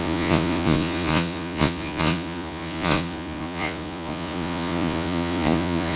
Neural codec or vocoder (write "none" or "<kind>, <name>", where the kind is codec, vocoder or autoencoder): vocoder, Vocos